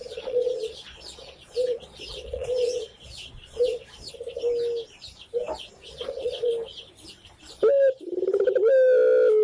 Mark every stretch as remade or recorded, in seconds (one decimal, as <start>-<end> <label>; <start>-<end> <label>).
0.0-4.1 remade; 4.1-5.9 recorded; 5.9-6.5 remade; 6.5-9.4 recorded

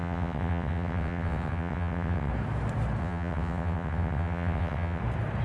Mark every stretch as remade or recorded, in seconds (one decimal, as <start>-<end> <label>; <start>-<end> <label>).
0.0-2.3 remade; 2.3-3.0 recorded; 3.0-5.0 remade; 5.0-5.4 recorded